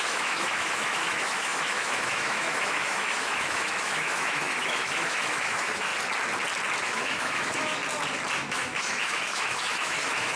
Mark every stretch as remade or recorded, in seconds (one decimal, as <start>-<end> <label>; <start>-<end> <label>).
0.0-5.9 remade; 5.9-6.8 recorded; 6.8-7.8 remade; 7.8-8.5 recorded; 8.5-10.3 remade